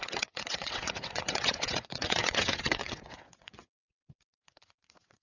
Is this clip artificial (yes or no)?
yes